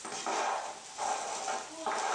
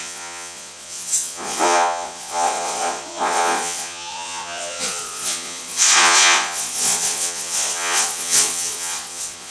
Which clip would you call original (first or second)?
first